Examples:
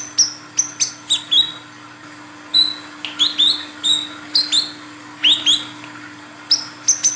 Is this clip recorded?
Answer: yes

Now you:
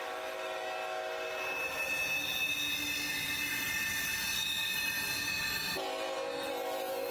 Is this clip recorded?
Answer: yes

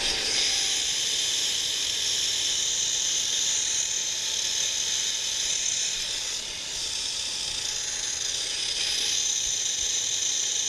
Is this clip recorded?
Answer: yes